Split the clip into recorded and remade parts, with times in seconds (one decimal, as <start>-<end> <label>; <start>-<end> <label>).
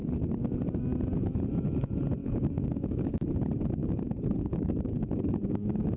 0.0-2.2 recorded; 2.2-3.1 remade; 3.1-3.8 recorded; 3.8-6.0 remade